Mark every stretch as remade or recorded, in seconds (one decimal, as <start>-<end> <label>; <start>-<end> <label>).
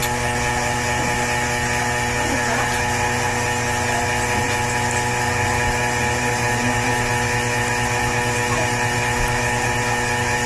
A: 0.0-10.5 recorded